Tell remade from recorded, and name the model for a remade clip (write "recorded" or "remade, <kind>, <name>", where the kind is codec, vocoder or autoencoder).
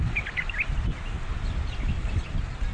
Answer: recorded